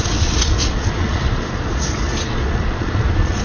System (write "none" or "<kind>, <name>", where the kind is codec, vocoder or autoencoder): vocoder, Vocos